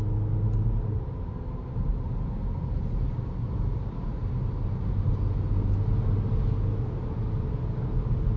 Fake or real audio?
real